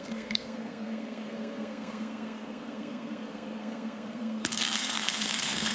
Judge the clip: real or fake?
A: fake